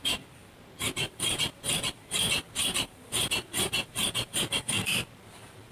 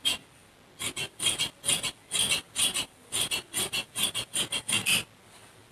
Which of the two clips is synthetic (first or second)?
first